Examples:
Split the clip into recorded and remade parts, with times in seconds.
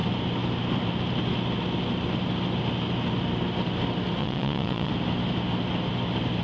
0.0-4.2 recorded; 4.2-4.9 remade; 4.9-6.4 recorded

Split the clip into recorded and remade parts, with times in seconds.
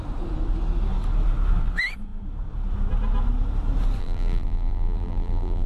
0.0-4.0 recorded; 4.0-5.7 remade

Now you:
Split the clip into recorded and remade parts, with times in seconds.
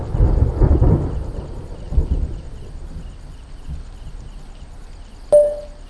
0.0-5.9 recorded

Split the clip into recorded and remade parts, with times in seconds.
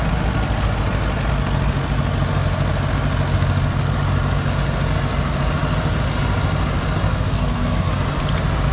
0.0-7.1 recorded; 7.1-7.9 remade; 7.9-8.7 recorded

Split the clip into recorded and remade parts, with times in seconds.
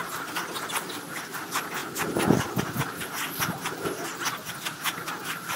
0.0-5.6 recorded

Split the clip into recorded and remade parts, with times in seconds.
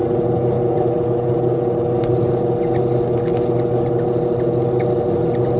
0.0-5.6 recorded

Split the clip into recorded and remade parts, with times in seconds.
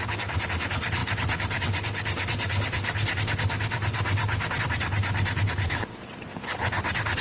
0.0-7.2 recorded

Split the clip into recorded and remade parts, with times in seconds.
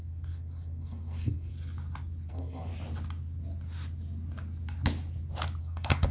0.0-1.5 remade; 1.5-2.3 recorded; 2.3-2.7 remade; 2.7-5.6 recorded; 5.6-6.1 remade